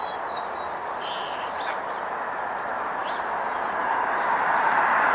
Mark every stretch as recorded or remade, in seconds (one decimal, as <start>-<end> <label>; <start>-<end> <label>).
0.0-3.0 recorded; 3.0-5.1 remade